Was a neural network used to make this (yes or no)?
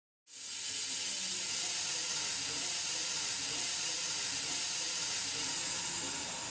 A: no